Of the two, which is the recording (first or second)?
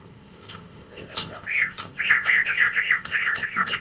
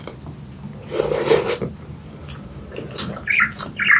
second